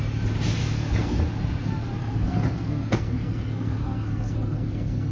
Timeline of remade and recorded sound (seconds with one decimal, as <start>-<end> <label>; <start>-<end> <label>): 0.0-0.6 recorded; 0.6-1.2 remade; 1.2-2.0 recorded; 2.0-5.1 remade

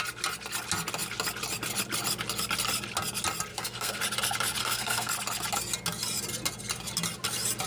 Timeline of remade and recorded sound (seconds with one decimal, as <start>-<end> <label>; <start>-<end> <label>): 0.0-3.5 recorded; 3.5-4.0 remade; 4.0-4.6 recorded; 4.6-5.1 remade; 5.1-7.7 recorded